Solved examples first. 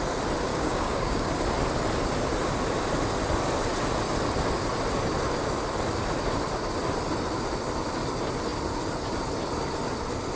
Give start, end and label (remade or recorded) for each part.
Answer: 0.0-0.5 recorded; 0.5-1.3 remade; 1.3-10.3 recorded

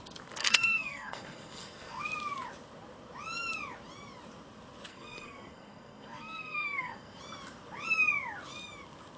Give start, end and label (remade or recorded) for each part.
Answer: 0.0-0.4 recorded; 0.4-2.0 remade; 2.0-4.9 recorded; 4.9-7.2 remade; 7.2-9.2 recorded

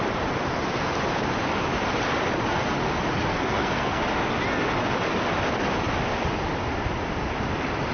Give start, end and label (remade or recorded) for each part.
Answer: 0.0-3.3 recorded; 3.3-4.0 remade; 4.0-7.9 recorded

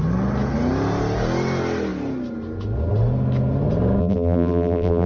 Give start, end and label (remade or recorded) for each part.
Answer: 0.0-4.0 recorded; 4.0-5.1 remade

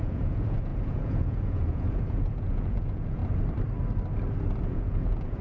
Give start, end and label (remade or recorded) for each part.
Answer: 0.0-3.2 remade; 3.2-4.6 recorded; 4.6-5.4 remade

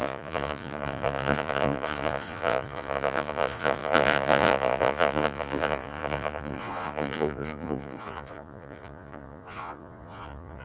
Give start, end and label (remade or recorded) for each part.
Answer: 0.0-10.6 remade